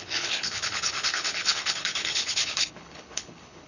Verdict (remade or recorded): remade